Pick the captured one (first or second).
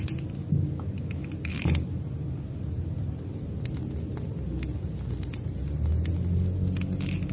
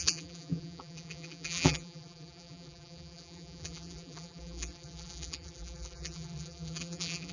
first